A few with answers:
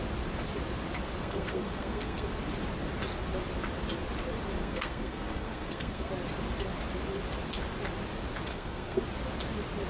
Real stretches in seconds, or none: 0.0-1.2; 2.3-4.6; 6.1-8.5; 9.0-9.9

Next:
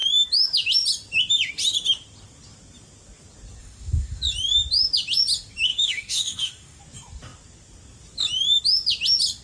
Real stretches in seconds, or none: 0.0-3.6; 4.2-5.7; 6.8-9.4

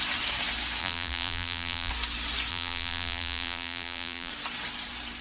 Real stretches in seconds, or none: 0.0-0.8; 1.9-2.5; 4.3-5.2

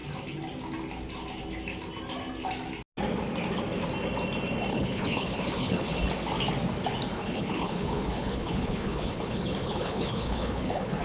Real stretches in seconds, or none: 0.0-4.7; 6.0-7.1

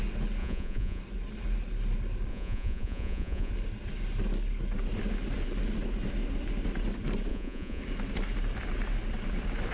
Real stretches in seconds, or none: 0.0-0.4; 1.0-2.3; 3.5-7.3; 7.8-9.7

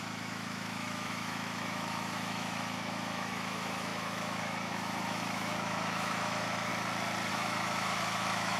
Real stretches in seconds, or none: 6.7-7.3

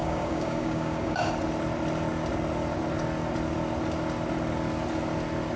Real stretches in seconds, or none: 1.3-5.6

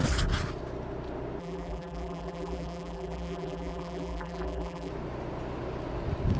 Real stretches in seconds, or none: 0.0-1.4; 4.9-6.4